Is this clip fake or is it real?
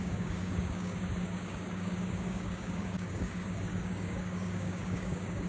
fake